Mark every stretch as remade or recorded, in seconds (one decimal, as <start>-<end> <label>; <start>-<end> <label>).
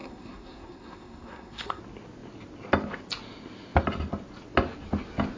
0.0-1.8 remade; 1.8-5.4 recorded